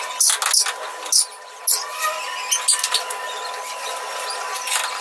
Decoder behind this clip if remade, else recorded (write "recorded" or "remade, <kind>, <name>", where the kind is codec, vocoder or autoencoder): recorded